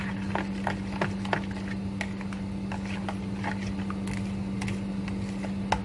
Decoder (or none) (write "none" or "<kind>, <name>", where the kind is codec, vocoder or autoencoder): none